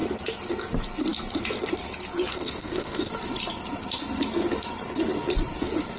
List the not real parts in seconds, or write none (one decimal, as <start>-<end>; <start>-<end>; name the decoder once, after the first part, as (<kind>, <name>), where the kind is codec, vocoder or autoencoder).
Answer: 2.3-3.1 (codec, SNAC)